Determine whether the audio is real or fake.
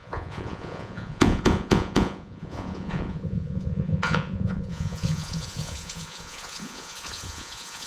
fake